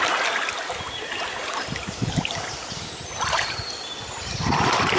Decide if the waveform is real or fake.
real